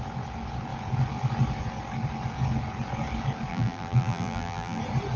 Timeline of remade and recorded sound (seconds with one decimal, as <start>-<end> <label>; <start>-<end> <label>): 0.0-3.5 recorded; 3.5-4.8 remade; 4.8-5.2 recorded